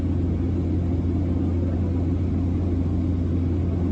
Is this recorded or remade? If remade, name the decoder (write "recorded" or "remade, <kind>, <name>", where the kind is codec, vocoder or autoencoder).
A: recorded